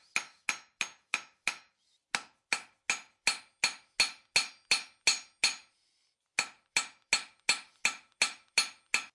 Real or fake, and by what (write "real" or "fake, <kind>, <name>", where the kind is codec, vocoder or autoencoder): real